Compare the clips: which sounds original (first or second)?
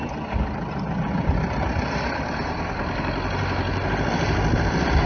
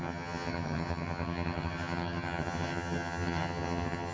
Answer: first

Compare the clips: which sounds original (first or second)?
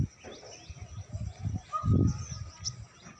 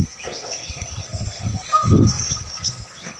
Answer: first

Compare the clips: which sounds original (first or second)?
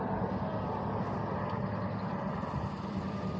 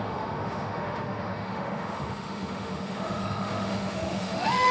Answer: first